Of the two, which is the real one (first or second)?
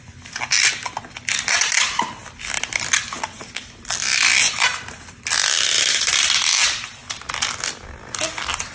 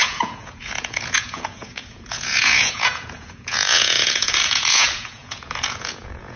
first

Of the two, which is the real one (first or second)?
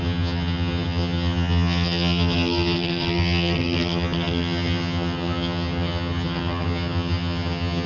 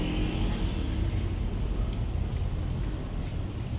second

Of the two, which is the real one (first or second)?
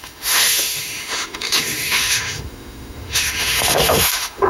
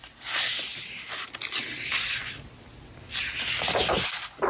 second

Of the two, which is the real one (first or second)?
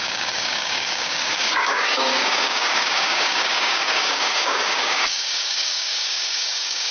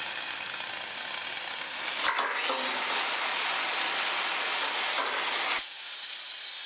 second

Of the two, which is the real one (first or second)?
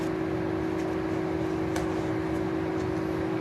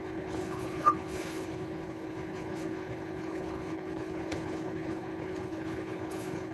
first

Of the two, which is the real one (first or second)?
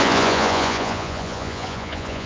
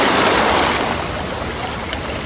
second